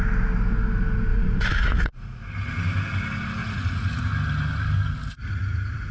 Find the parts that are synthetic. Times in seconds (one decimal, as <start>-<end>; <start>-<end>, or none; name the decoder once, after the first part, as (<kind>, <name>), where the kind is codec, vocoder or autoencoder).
1.1-2.2 (vocoder, Vocos); 3.4-4.0; 5.1-5.9